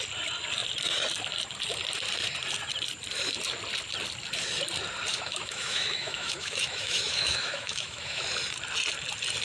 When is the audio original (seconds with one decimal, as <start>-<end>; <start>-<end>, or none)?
0.0-5.1; 8.2-9.4